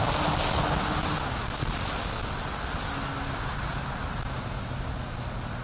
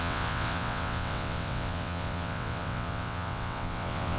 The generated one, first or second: second